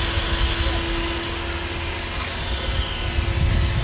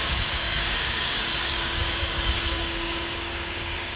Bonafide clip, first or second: first